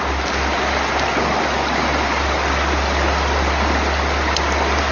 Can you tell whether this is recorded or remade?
recorded